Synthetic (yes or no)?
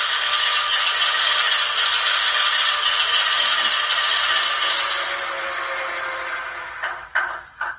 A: no